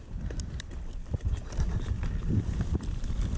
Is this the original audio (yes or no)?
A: no